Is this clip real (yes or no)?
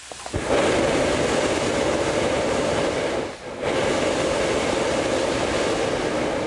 yes